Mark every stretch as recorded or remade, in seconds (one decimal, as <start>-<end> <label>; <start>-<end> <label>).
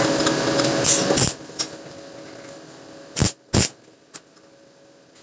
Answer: 0.0-5.2 recorded